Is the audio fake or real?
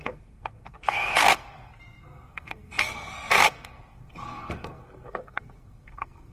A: fake